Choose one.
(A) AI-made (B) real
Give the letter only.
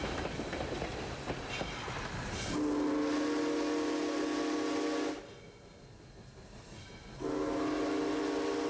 B